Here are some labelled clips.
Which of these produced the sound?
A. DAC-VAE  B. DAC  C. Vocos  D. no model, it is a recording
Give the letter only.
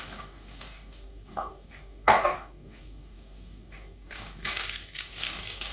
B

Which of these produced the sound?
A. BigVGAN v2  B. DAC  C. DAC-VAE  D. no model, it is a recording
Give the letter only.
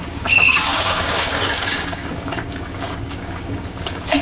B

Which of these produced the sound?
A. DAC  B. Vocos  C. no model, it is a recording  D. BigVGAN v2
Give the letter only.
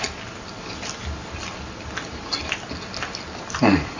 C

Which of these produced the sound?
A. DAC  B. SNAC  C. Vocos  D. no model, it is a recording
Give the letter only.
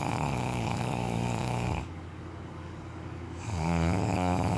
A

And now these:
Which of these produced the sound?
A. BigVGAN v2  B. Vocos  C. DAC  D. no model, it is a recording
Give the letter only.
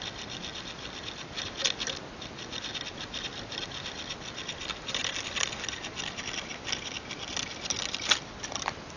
D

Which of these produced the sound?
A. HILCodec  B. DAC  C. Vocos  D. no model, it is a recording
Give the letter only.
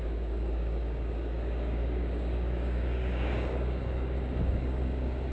B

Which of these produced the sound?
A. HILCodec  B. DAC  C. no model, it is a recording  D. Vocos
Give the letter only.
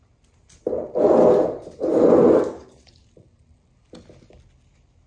C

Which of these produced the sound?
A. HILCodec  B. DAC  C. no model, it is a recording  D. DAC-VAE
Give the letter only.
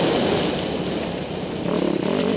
C